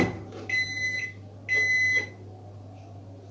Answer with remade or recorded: recorded